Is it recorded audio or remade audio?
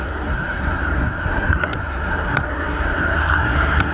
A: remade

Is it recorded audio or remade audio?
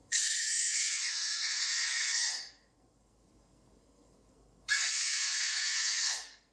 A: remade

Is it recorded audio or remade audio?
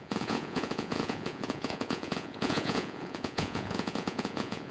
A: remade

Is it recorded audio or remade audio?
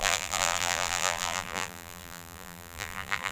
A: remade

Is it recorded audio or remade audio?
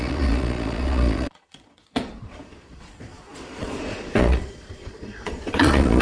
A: remade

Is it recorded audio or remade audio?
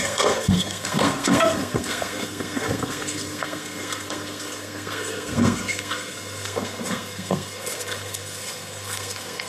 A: remade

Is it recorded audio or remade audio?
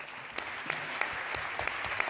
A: recorded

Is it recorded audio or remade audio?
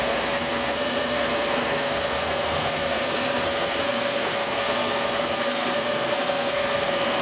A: remade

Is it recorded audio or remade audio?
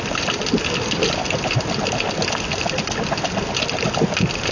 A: recorded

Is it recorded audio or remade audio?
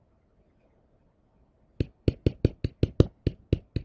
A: recorded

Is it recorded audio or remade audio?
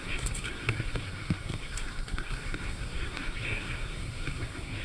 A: remade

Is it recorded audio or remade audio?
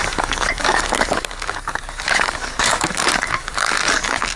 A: remade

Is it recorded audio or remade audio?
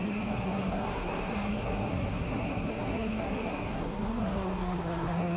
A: remade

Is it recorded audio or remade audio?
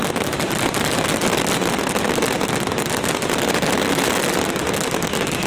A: recorded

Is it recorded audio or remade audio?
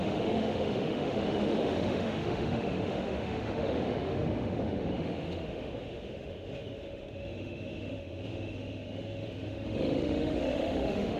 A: remade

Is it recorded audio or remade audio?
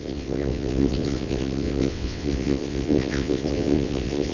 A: remade